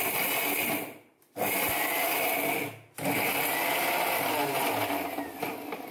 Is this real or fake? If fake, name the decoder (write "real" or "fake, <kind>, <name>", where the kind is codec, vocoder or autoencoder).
real